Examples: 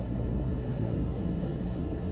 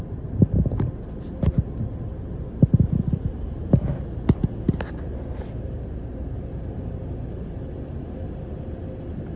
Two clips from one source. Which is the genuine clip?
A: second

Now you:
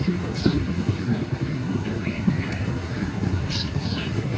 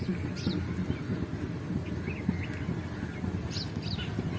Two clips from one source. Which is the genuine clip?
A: second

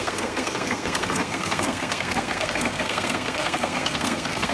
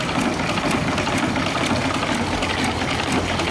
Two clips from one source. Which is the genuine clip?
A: second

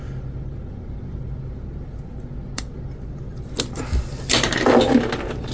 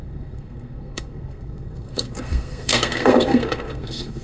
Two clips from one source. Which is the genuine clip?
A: first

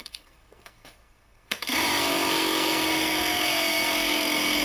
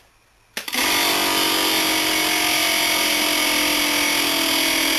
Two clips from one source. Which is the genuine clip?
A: second